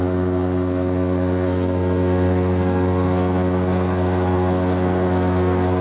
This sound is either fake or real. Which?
fake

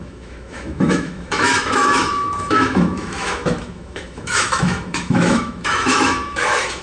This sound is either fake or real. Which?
fake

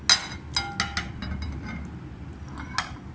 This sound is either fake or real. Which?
real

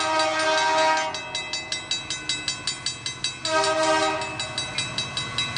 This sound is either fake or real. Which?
real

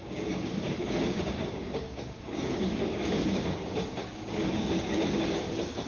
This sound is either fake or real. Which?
fake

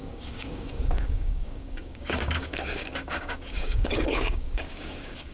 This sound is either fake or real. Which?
fake